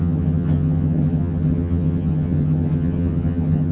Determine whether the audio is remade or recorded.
remade